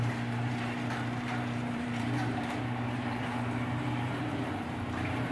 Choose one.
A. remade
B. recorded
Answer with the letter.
A